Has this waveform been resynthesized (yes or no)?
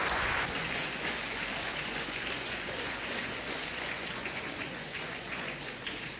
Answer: yes